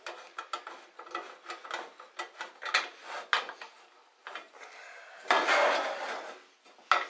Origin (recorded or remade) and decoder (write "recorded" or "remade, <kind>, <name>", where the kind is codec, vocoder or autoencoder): recorded